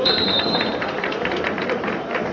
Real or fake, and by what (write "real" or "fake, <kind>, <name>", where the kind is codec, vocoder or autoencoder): fake, vocoder, BigVGAN v2